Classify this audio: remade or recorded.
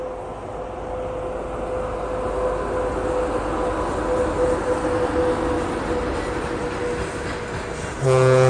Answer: recorded